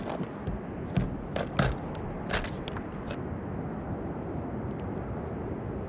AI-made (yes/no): no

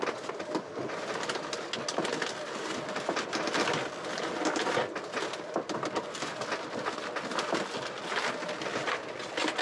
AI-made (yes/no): no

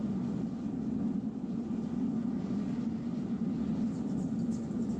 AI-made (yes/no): no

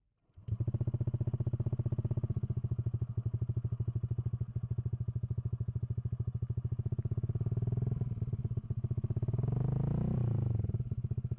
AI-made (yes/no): no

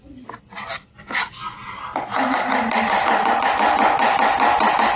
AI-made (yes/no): no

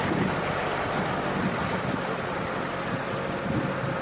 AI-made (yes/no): no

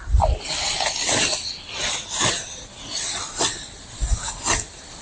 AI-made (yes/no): no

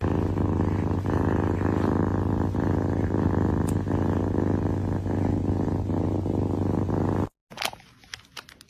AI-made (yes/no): no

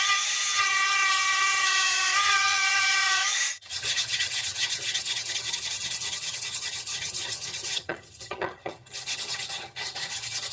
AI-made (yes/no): yes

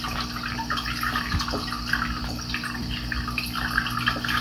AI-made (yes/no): no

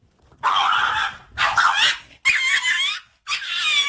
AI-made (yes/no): no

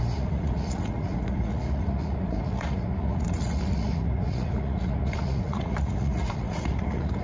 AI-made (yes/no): yes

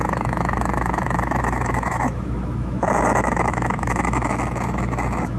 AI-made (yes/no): yes